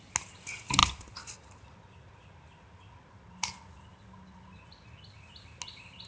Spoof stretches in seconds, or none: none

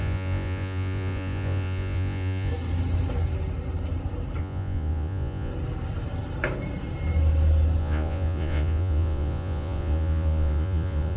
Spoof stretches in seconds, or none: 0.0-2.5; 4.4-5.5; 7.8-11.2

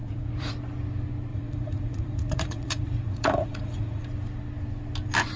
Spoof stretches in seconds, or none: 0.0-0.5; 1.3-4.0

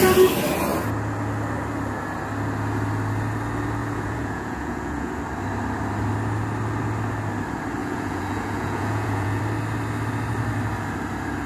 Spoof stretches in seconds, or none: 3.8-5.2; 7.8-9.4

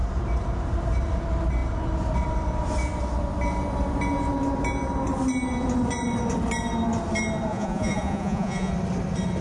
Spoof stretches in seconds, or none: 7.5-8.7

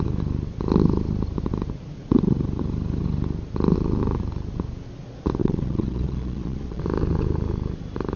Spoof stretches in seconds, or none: 5.4-6.8

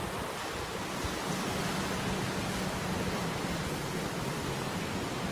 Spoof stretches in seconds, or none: none

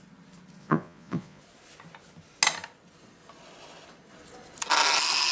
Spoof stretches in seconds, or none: 0.6-1.4